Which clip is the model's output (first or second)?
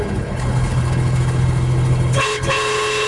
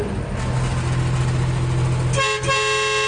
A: first